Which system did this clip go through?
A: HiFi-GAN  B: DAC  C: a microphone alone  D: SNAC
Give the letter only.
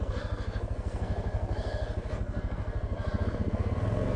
D